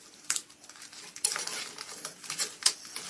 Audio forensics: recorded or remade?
recorded